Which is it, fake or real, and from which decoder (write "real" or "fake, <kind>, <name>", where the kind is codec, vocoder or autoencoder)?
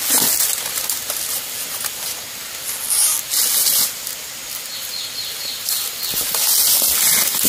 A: real